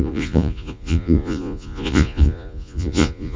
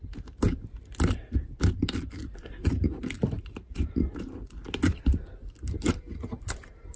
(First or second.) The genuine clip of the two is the second